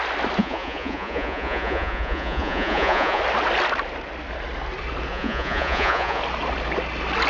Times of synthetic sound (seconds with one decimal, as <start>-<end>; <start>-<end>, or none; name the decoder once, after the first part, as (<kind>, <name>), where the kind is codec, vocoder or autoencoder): 0.4-3.2 (vocoder, Vocos); 5.1-6.2